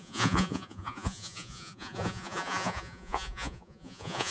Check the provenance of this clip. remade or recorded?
remade